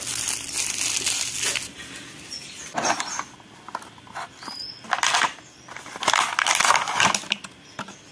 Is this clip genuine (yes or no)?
yes